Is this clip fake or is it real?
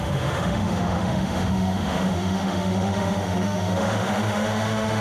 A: fake